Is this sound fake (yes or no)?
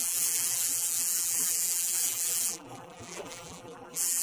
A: yes